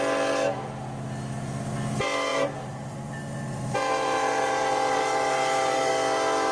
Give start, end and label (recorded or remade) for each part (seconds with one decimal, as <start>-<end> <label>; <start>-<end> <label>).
0.0-2.3 recorded; 2.3-5.9 remade; 5.9-6.5 recorded